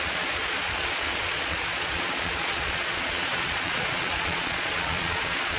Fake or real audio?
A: fake